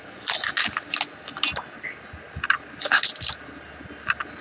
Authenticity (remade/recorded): recorded